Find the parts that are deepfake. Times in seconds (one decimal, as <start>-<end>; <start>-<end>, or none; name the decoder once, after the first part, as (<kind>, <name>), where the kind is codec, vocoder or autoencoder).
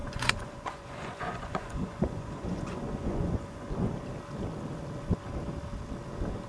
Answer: 0.0-3.9 (vocoder, Vocos)